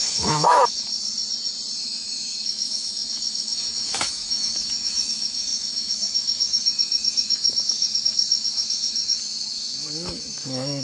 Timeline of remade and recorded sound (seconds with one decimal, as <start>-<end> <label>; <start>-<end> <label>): 0.0-0.9 remade; 0.9-1.8 recorded; 1.8-10.8 remade

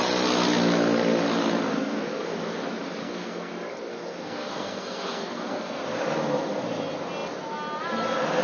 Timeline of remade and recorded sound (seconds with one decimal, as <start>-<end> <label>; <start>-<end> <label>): 0.0-1.7 recorded; 1.7-2.4 remade; 2.4-3.0 recorded; 3.0-3.5 remade; 3.5-3.9 recorded; 3.9-5.8 remade; 5.8-8.4 recorded

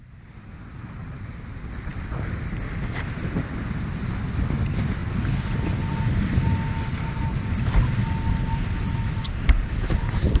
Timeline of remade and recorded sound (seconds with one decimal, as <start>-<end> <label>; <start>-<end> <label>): 0.0-10.4 recorded

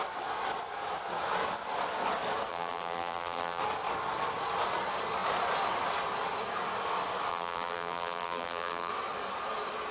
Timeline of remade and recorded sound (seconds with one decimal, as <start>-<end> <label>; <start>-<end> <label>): 0.0-2.5 recorded; 2.5-3.6 remade; 3.6-7.3 recorded; 7.3-8.9 remade; 8.9-9.9 recorded

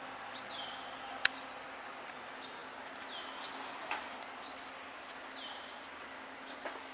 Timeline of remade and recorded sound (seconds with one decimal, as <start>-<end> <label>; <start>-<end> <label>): 0.0-6.9 recorded